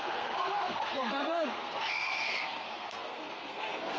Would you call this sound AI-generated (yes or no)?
yes